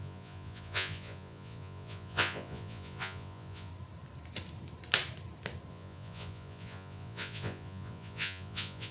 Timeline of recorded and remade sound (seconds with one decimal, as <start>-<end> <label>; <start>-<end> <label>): 0.0-3.7 remade; 3.7-5.7 recorded; 5.7-8.9 remade